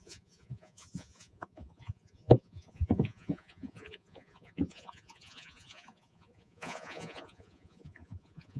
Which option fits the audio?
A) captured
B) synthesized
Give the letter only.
B